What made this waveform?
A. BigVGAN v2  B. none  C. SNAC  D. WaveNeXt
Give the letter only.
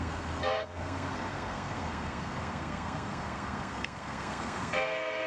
C